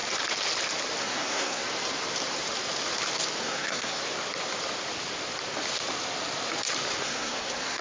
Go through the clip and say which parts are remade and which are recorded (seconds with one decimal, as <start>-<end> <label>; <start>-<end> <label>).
0.0-1.0 recorded; 1.0-1.6 remade; 1.6-3.4 recorded; 3.4-4.0 remade; 4.0-7.0 recorded; 7.0-7.8 remade